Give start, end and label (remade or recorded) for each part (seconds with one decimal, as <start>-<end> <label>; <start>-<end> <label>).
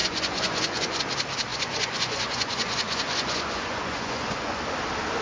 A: 0.0-1.0 remade; 1.0-1.5 recorded; 1.5-4.6 remade; 4.6-5.2 recorded